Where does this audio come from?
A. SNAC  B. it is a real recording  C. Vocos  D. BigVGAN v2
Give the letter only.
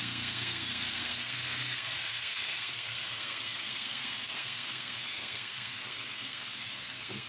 A